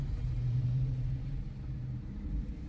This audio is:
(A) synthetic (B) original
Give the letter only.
A